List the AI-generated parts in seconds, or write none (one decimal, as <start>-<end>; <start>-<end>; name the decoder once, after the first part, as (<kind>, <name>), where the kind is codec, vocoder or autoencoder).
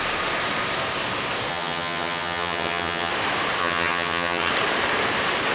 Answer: 1.5-3.1 (vocoder, HiFi-GAN); 3.6-4.5